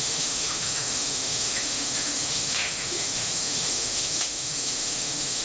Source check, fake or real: fake